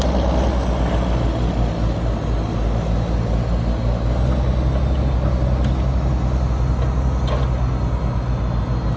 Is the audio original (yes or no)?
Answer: yes